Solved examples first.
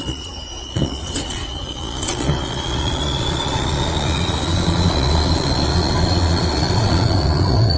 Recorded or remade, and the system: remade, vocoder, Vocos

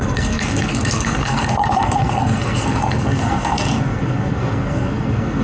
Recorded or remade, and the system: remade, codec, SNAC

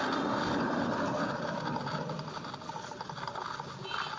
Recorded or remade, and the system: recorded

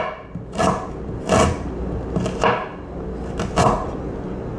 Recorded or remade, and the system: recorded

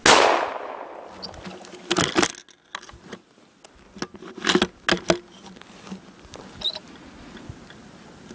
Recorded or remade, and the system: recorded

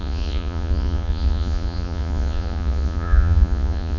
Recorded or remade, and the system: remade, vocoder, Vocos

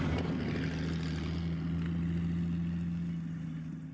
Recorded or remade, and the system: recorded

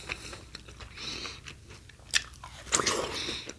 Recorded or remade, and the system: recorded